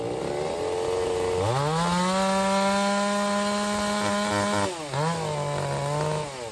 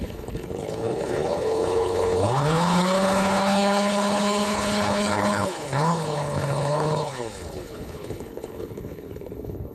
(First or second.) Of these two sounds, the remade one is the second